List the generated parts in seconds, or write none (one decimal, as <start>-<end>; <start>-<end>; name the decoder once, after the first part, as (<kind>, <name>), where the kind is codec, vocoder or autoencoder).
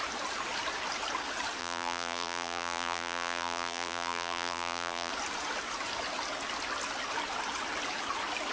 1.6-5.1 (vocoder, BigVGAN v2)